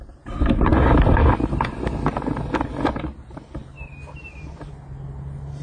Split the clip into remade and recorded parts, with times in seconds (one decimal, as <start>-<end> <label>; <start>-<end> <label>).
0.0-5.6 recorded